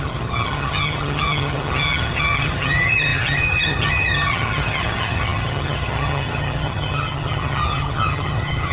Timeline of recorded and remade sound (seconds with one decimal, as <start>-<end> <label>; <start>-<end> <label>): 0.0-8.7 remade